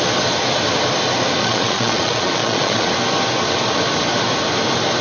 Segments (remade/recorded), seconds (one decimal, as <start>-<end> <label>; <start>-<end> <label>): 0.0-1.4 recorded; 1.4-2.9 remade; 2.9-5.0 recorded